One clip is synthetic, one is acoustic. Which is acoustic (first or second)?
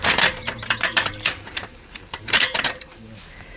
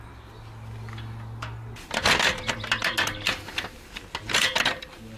second